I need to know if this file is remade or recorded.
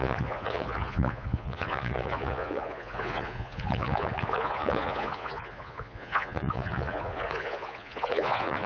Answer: remade